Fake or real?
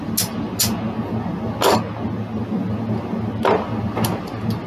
real